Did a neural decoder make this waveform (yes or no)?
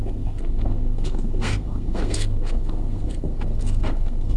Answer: yes